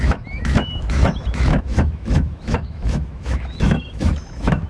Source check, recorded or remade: remade